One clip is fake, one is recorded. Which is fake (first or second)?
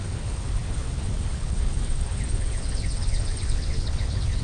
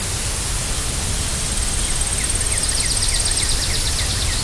first